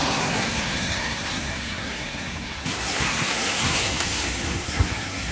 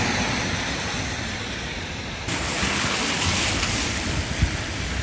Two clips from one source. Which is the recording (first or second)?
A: second